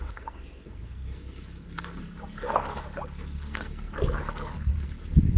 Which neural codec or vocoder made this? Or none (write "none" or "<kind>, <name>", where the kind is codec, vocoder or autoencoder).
codec, SNAC